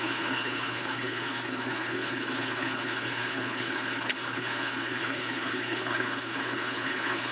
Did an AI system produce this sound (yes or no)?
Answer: yes